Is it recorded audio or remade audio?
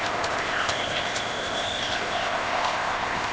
remade